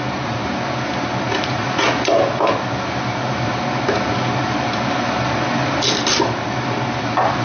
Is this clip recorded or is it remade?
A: recorded